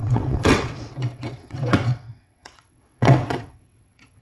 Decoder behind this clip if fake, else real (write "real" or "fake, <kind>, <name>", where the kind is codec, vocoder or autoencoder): fake, vocoder, WaveNeXt